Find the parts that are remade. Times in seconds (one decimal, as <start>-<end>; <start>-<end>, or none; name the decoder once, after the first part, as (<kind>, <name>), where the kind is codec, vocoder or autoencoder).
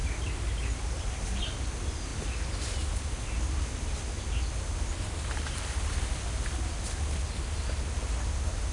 none